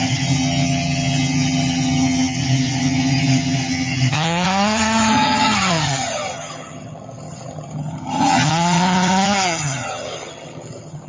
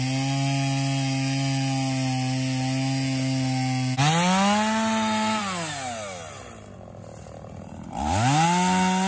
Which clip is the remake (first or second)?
first